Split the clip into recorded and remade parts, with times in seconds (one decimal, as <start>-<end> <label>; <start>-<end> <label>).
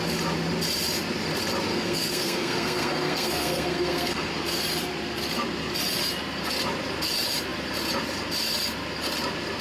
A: 0.0-1.7 recorded; 1.7-4.3 remade; 4.3-9.6 recorded